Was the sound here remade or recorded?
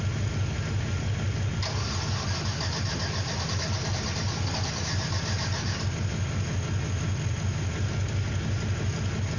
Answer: recorded